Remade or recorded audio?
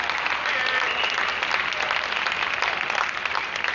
recorded